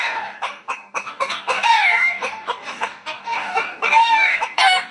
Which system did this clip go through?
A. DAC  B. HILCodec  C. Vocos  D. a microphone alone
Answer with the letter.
A